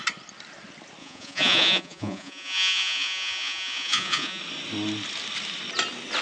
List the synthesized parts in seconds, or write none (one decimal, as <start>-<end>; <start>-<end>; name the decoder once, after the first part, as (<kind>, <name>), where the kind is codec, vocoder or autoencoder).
1.0-4.4 (vocoder, Vocos)

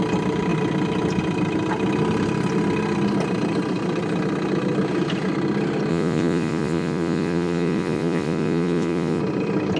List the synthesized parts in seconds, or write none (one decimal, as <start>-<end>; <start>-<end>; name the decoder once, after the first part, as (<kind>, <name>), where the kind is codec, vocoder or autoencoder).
5.9-9.2 (vocoder, Vocos)

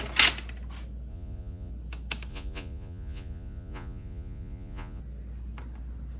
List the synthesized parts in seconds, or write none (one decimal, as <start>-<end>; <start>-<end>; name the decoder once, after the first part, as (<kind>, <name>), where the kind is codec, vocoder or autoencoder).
1.1-1.7 (vocoder, Vocos); 2.3-5.0

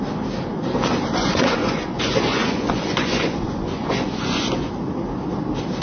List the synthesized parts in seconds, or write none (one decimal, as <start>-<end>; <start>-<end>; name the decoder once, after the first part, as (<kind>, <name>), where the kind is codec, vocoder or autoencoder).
1.2-4.7 (vocoder, Vocos)

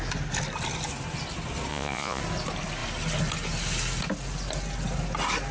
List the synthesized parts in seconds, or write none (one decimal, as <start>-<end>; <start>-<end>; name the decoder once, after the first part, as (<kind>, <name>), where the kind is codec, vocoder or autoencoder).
1.7-2.2 (vocoder, Vocos)